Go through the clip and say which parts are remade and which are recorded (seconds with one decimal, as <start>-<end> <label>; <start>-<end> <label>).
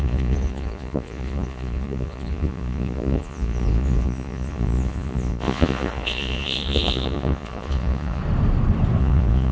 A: 0.0-8.2 remade; 8.2-9.0 recorded; 9.0-9.5 remade